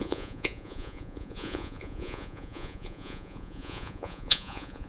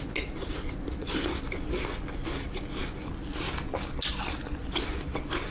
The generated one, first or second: first